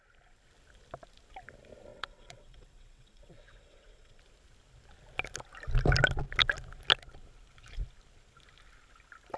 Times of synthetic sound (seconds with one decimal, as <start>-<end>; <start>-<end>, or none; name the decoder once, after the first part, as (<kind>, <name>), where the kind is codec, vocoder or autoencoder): 1.9-4.2 (vocoder, WaveNeXt)